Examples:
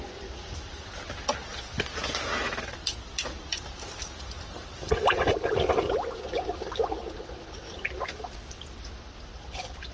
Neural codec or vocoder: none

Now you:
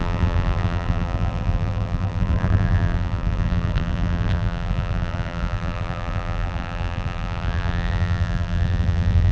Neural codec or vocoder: vocoder, BigVGAN v2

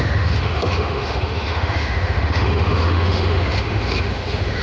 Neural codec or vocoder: autoencoder, DAC-VAE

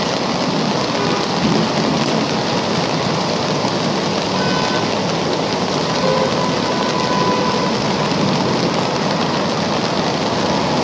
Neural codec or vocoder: none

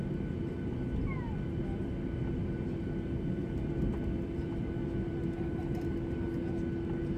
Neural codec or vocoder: none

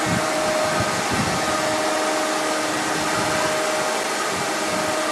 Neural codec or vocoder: none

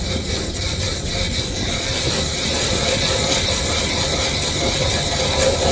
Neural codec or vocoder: none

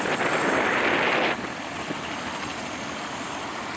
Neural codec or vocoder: none